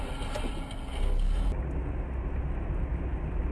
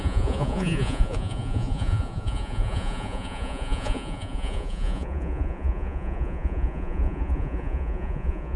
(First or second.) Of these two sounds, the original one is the first